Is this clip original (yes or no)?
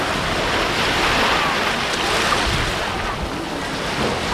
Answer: yes